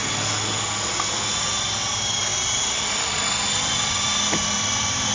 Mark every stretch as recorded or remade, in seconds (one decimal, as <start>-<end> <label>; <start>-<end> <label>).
0.0-5.1 recorded